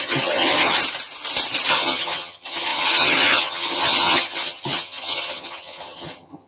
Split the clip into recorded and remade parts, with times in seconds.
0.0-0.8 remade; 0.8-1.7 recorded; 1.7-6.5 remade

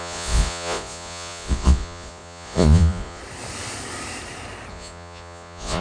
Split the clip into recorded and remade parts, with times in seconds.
0.0-3.2 remade; 3.2-4.7 recorded; 4.7-5.8 remade

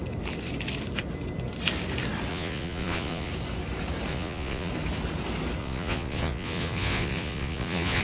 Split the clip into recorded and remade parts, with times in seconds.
0.0-2.3 recorded; 2.3-3.3 remade; 3.3-4.1 recorded; 4.1-4.7 remade; 4.7-5.6 recorded; 5.6-8.0 remade

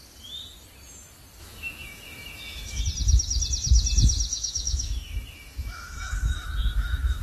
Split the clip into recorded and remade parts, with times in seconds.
0.0-1.4 recorded; 1.4-2.8 remade; 2.8-4.3 recorded; 4.3-7.2 remade

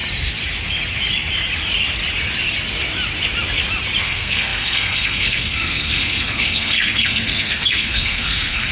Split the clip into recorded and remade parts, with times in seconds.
0.0-4.0 recorded; 4.0-8.7 remade

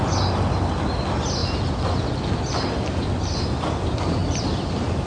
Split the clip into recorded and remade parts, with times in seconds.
0.0-5.1 recorded

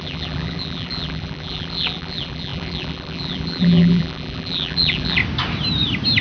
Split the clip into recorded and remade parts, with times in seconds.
0.0-5.2 remade; 5.2-6.2 recorded